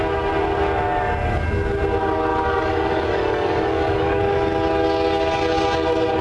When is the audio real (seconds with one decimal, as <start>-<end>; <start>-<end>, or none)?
0.0-2.3; 4.2-6.2